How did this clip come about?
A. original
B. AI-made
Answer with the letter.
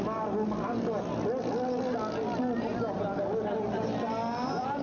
A